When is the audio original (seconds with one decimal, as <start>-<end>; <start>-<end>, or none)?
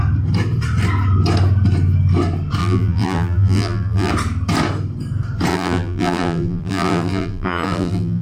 0.0-2.6; 4.1-5.5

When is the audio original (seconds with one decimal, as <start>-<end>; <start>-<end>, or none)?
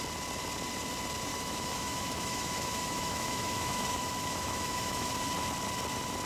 0.0-1.3; 5.1-6.3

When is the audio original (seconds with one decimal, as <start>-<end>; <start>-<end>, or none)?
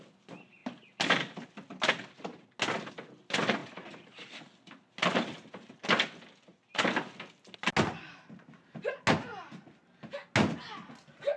0.0-11.4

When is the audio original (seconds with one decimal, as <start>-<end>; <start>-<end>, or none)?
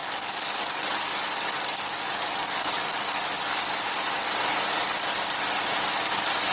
3.2-6.5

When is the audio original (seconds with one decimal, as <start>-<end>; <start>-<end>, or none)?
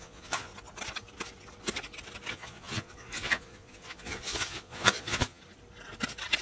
0.5-2.3; 5.4-6.4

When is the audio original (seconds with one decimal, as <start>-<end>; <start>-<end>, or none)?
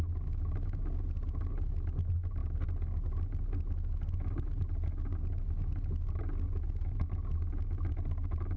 0.0-8.6